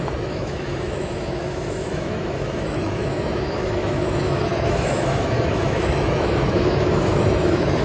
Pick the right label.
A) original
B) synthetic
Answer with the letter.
B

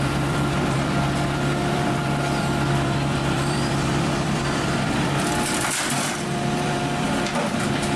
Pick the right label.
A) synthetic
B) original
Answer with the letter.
A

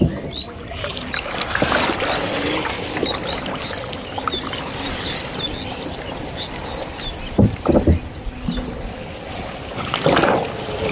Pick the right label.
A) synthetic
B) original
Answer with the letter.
B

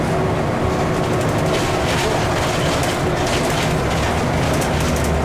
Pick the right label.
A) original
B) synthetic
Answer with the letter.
A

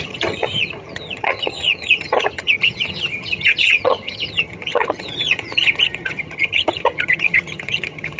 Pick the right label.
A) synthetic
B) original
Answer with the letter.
A